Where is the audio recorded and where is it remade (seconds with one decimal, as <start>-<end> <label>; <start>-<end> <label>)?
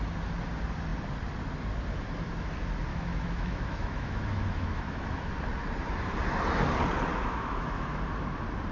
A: 0.0-2.9 recorded; 2.9-5.3 remade; 5.3-7.1 recorded; 7.1-8.0 remade; 8.0-8.7 recorded